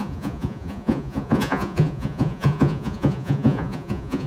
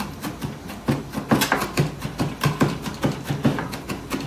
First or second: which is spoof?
first